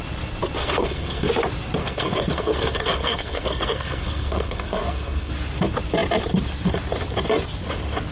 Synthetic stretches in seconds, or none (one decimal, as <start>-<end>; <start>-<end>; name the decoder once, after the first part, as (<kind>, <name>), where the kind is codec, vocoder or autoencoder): 0.6-1.3 (codec, SNAC); 1.8-5.3